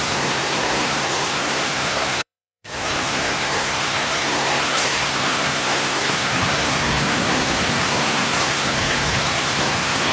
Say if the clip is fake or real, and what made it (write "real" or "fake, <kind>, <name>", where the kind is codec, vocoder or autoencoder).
fake, codec, SNAC